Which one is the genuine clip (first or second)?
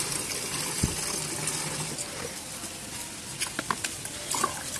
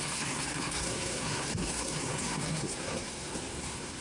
first